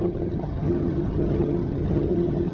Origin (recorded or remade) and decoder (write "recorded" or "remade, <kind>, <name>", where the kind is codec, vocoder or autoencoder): remade, vocoder, HiFi-GAN